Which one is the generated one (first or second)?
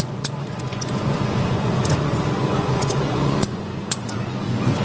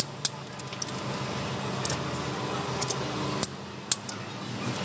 first